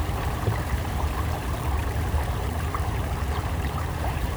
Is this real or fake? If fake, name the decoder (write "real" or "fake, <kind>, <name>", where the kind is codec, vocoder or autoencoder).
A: fake, vocoder, BigVGAN v2